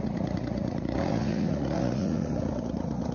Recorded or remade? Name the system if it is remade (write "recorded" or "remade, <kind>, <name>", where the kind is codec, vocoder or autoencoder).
remade, vocoder, Vocos